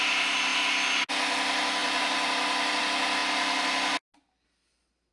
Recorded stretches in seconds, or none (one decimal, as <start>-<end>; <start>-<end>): 0.0-1.8; 2.8-5.1